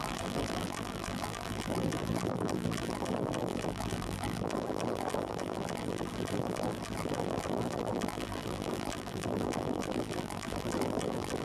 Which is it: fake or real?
fake